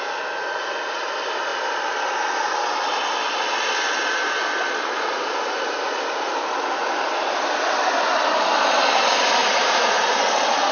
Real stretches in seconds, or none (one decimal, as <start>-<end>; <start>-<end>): 0.0-9.4; 10.2-10.7